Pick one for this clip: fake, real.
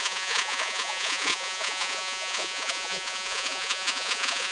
fake